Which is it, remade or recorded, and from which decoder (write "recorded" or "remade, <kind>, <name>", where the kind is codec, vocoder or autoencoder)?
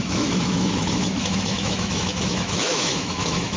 remade, autoencoder, DAC-VAE